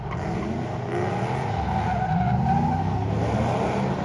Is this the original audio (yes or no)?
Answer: yes